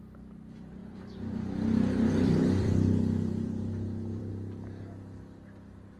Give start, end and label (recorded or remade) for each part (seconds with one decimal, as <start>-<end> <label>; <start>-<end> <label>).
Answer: 0.0-0.8 recorded; 0.8-4.3 remade; 4.3-6.0 recorded